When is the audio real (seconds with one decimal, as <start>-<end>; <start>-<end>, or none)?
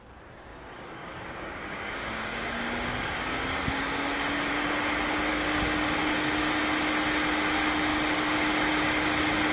0.0-0.5; 4.5-5.3; 6.6-9.5